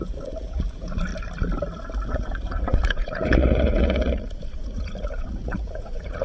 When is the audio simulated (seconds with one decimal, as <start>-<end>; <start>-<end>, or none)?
0.0-1.1; 2.1-6.2